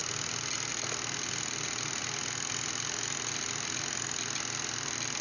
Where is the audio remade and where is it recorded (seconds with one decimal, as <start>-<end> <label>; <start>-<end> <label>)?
0.0-5.2 recorded